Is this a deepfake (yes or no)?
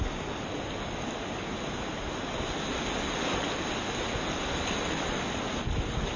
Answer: no